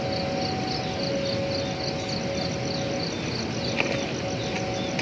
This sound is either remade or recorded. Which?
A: recorded